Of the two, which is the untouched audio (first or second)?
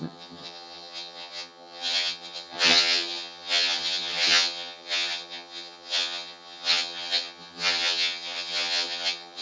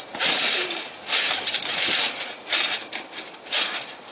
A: second